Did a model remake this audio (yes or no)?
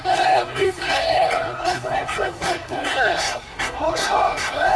yes